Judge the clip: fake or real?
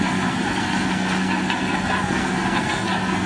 fake